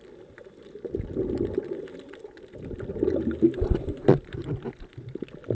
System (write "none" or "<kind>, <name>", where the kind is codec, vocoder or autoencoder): none